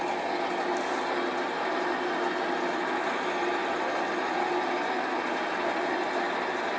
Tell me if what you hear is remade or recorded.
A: recorded